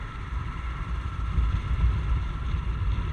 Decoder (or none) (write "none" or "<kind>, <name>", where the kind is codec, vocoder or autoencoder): none